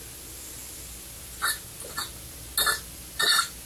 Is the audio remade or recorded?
recorded